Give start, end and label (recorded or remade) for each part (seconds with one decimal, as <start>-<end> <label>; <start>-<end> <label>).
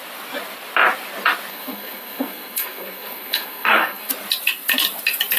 0.0-1.5 recorded; 1.5-4.1 remade; 4.1-5.4 recorded